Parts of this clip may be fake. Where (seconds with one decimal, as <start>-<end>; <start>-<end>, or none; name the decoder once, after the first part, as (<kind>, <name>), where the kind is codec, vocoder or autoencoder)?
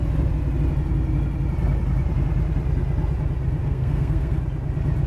3.6-4.4 (codec, SNAC)